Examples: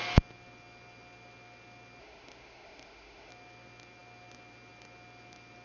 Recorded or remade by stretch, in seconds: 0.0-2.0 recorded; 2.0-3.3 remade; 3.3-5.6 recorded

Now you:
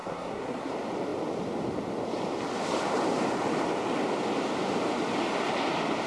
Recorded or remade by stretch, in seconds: 0.0-0.7 remade; 0.7-6.1 recorded

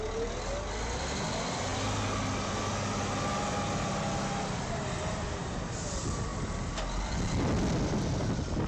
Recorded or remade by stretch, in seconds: 0.0-8.7 recorded

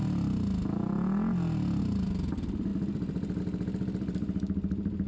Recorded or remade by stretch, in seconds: 0.0-1.8 recorded; 1.8-5.1 remade

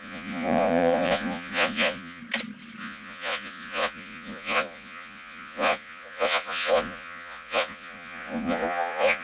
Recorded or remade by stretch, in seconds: 0.0-2.2 remade; 2.2-2.8 recorded; 2.8-9.2 remade

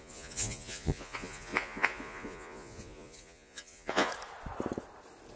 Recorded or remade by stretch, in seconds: 0.0-4.1 remade; 4.1-5.4 recorded

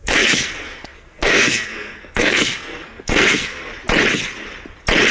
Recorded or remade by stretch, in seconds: 0.0-3.7 remade; 3.7-5.1 recorded

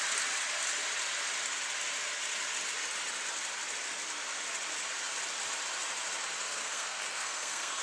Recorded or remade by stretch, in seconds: 0.0-6.4 recorded; 6.4-7.8 remade